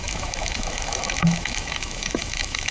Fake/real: fake